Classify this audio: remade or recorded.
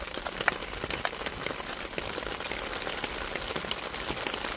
recorded